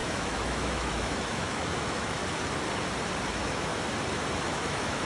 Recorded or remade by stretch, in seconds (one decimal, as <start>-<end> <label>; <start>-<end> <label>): 0.0-2.2 remade; 2.2-3.3 recorded; 3.3-3.7 remade; 3.7-4.4 recorded; 4.4-5.0 remade

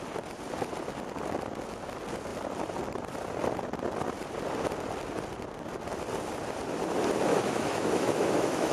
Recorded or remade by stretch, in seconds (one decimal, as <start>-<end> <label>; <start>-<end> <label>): 0.0-7.3 recorded; 7.3-8.7 remade

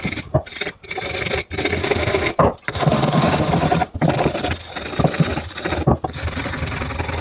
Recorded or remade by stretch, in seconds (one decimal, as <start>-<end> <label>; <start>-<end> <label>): 0.0-1.8 recorded; 1.8-2.3 remade; 2.3-2.7 recorded; 2.7-3.5 remade; 3.5-7.2 recorded

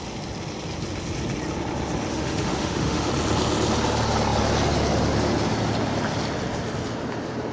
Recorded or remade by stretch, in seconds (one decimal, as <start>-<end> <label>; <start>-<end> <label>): 0.0-2.1 recorded; 2.1-3.1 remade; 3.1-7.5 recorded

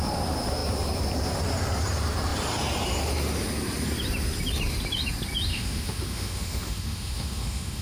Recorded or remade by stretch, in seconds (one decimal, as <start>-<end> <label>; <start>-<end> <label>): 0.0-5.5 recorded; 5.5-7.8 remade

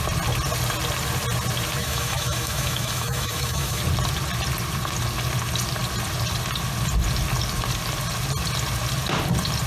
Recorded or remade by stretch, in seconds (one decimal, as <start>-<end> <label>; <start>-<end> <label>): 0.0-1.8 recorded; 1.8-3.8 remade; 3.8-9.7 recorded

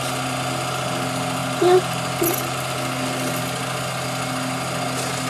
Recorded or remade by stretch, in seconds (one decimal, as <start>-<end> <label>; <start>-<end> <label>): 0.0-5.3 recorded